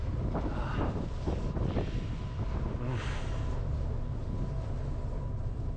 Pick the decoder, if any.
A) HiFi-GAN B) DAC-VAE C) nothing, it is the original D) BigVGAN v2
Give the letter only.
C